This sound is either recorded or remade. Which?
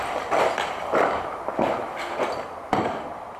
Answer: recorded